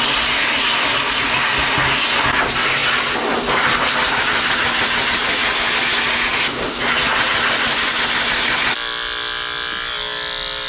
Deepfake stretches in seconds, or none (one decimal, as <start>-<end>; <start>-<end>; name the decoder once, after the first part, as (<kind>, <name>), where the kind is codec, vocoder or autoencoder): 7.1-8.0 (vocoder, BigVGAN v2)